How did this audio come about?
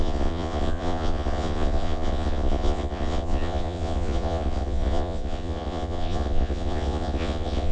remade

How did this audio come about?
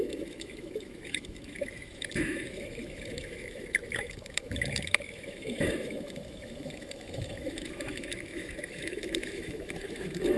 remade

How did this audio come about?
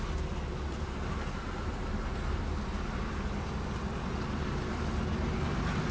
recorded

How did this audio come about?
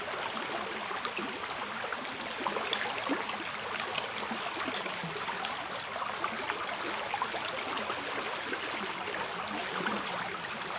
recorded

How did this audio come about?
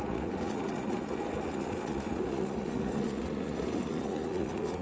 remade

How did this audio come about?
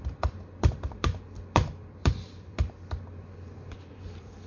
remade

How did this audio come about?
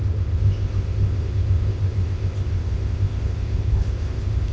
remade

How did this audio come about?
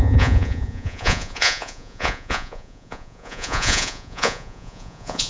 remade